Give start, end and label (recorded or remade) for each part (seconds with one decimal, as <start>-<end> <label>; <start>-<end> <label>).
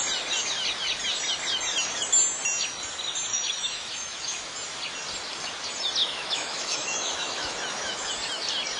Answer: 0.0-3.3 recorded; 3.3-4.4 remade; 4.4-6.0 recorded; 6.0-8.1 remade; 8.1-8.8 recorded